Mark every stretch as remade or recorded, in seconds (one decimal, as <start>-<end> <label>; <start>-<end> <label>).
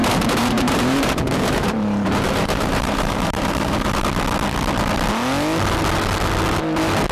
0.0-4.0 remade; 4.0-7.1 recorded